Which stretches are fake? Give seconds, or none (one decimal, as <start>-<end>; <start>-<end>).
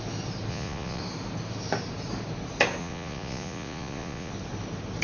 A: 0.5-1.0; 2.8-4.3